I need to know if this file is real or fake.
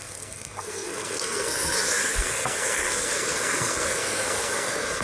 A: fake